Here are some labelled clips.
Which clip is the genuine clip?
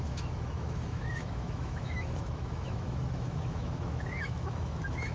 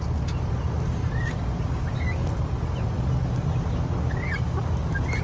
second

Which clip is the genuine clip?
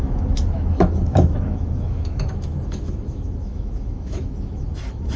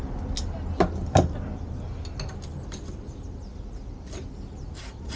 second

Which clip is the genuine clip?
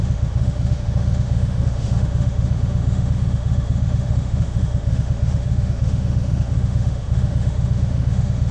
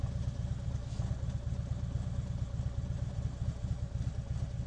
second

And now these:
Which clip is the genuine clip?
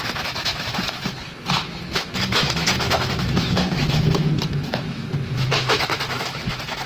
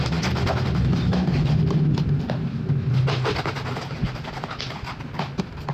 second